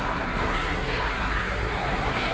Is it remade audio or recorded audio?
remade